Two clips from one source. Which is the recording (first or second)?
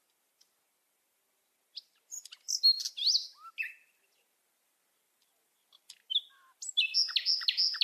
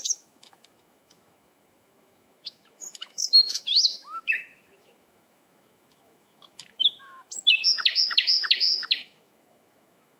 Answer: first